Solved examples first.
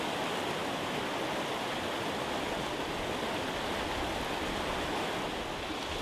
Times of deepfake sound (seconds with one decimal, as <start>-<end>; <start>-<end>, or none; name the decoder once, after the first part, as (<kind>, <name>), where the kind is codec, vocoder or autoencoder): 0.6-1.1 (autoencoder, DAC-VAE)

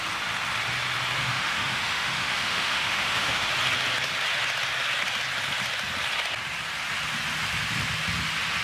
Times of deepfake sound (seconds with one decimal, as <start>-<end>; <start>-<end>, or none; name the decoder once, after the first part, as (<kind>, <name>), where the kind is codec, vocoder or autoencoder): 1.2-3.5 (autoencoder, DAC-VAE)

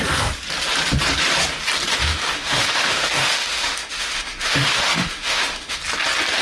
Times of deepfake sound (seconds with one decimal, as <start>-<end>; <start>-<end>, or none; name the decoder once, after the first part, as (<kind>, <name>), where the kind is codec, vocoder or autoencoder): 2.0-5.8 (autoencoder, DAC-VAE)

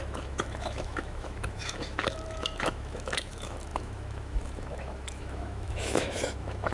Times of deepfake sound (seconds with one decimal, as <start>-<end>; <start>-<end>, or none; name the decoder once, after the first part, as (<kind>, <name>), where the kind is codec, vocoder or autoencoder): 0.0-6.7 (autoencoder, DAC-VAE)

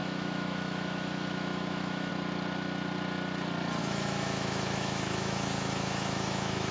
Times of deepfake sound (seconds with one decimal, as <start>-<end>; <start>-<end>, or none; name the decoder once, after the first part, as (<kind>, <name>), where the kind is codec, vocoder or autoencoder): 0.0-2.1 (autoencoder, DAC-VAE); 3.8-6.7